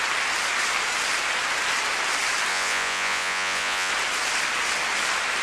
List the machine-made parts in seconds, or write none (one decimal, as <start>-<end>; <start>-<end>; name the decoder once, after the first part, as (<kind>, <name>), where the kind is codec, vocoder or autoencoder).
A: 2.5-3.9 (vocoder, Vocos)